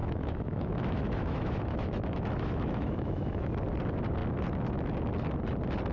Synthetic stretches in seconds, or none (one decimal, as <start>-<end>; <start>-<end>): 0.0-3.5